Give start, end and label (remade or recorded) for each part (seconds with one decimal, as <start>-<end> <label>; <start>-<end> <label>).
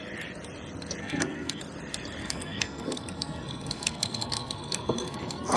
0.0-1.0 recorded; 1.0-1.6 remade; 1.6-2.2 recorded; 2.2-5.6 remade